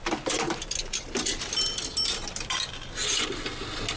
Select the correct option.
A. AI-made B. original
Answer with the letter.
B